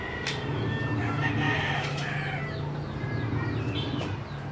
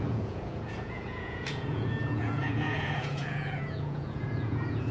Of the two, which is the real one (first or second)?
first